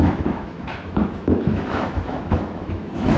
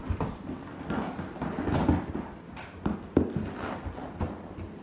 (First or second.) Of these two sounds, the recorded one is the second